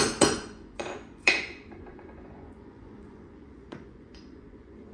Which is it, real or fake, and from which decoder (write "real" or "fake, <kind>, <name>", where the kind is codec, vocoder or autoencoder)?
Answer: fake, vocoder, Vocos